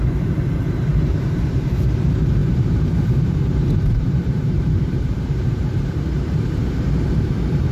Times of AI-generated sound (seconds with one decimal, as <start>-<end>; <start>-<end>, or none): 0.0-7.7